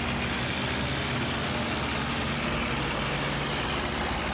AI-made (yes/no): no